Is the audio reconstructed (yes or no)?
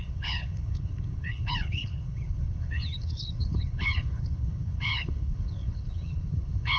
yes